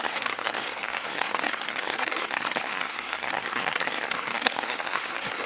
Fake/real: fake